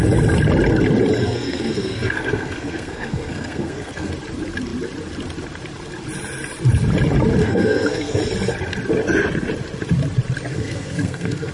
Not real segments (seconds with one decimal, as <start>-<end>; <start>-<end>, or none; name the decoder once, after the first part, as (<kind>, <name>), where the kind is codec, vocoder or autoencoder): 1.2-4.1 (codec, SNAC); 7.4-8.2; 10.5-11.5